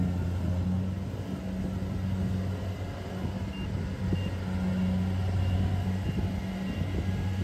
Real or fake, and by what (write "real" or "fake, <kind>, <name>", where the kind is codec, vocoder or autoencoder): real